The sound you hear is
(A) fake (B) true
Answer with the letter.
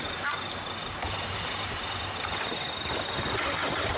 B